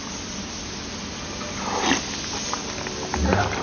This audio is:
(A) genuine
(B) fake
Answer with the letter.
A